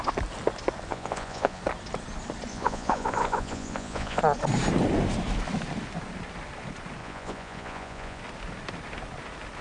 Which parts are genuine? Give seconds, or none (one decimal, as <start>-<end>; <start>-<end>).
0.0-0.9; 1.6-2.5; 4.2-7.0; 8.2-9.6